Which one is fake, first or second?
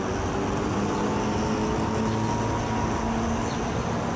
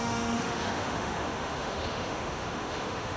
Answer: second